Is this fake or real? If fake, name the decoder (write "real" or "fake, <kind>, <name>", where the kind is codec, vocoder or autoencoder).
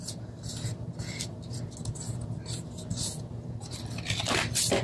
real